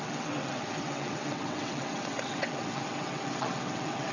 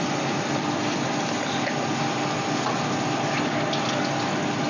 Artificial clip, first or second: first